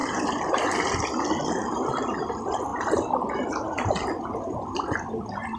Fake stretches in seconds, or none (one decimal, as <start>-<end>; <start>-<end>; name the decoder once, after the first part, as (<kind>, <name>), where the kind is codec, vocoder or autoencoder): none